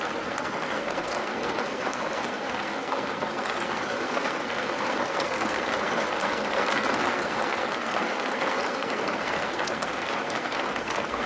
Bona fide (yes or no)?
no